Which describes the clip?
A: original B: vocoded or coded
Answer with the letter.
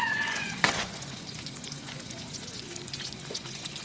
B